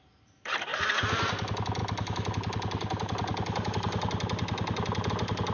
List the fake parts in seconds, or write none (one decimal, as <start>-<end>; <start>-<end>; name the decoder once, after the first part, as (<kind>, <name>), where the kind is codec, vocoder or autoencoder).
none